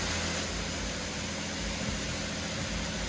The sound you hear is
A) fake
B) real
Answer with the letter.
B